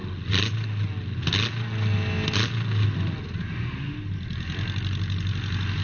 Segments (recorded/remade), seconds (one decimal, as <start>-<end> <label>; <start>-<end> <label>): 0.0-5.8 recorded